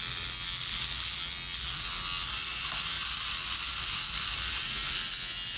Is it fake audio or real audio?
real